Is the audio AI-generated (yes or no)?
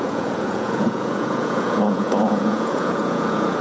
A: yes